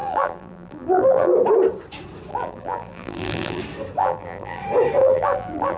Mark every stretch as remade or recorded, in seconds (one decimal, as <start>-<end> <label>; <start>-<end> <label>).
0.0-1.3 remade; 1.3-2.3 recorded; 2.3-3.6 remade; 3.6-4.0 recorded; 4.0-4.6 remade; 4.6-5.0 recorded; 5.0-5.8 remade